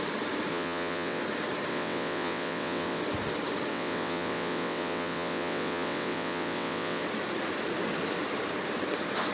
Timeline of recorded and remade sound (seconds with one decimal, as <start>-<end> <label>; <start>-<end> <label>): 0.0-0.5 recorded; 0.5-1.2 remade; 1.2-1.7 recorded; 1.7-3.0 remade; 3.0-3.7 recorded; 3.7-7.0 remade; 7.0-9.3 recorded